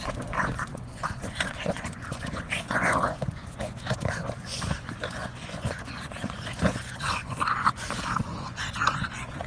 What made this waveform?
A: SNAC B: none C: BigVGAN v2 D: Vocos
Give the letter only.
D